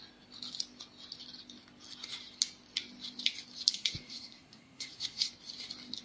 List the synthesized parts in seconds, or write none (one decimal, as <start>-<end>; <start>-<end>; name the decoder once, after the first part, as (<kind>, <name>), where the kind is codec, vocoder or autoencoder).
3.7-5.3 (codec, SNAC)